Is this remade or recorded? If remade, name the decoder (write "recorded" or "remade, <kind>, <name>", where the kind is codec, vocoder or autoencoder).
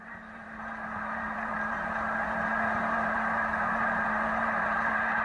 remade, vocoder, BigVGAN v2